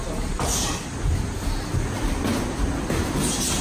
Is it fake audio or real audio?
real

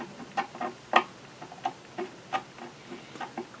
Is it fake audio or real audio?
real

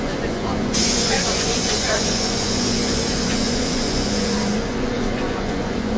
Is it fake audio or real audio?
fake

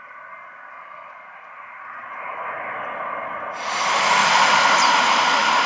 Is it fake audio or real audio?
real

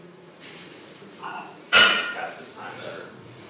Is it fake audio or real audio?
fake